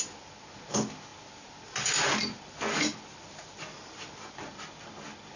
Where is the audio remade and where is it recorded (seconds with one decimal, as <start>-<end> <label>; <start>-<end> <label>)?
0.0-5.4 recorded